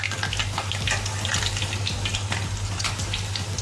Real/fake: real